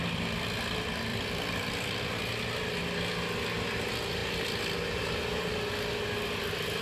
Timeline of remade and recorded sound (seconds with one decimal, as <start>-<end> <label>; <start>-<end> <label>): 0.0-1.1 recorded; 1.1-2.0 remade; 2.0-6.8 recorded